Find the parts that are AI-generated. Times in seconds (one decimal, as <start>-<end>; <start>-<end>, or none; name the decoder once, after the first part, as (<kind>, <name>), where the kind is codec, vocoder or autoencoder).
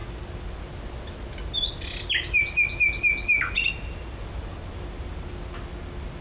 none